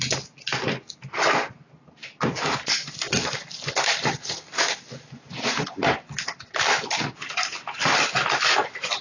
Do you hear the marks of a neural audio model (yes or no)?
no